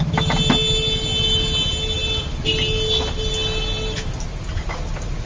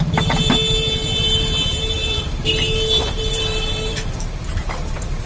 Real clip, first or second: first